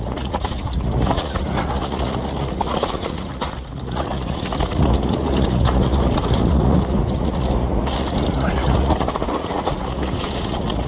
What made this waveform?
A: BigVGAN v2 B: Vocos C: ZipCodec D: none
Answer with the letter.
B